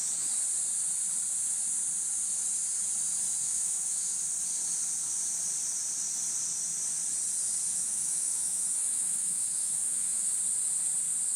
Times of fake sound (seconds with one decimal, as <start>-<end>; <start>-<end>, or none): 3.4-4.1; 7.7-10.3